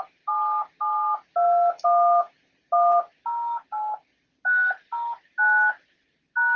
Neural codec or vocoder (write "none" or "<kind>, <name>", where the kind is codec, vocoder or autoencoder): none